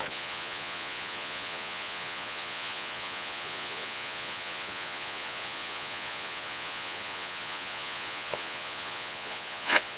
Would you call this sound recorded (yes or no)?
no